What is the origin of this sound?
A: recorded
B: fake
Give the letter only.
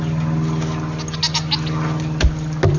A